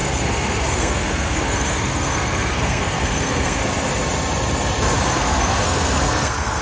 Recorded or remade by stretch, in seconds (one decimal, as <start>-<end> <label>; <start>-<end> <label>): 0.0-3.6 remade; 3.6-5.1 recorded; 5.1-6.6 remade